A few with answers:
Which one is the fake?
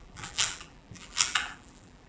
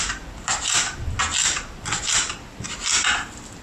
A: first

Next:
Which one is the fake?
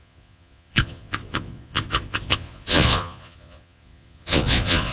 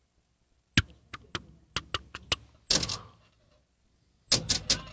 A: first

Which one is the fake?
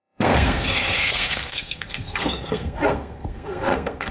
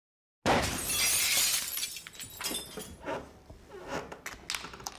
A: first